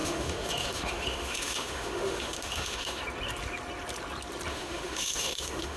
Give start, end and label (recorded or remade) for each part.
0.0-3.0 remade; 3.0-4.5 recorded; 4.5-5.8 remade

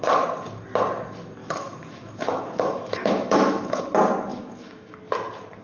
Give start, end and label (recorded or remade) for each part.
0.0-1.4 recorded; 1.4-3.8 remade; 3.8-4.3 recorded; 4.3-5.0 remade; 5.0-5.6 recorded